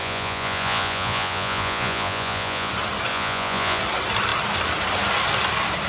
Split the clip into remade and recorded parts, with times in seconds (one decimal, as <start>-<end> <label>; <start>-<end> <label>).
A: 0.0-2.7 remade; 2.7-3.1 recorded; 3.1-3.8 remade; 3.8-5.9 recorded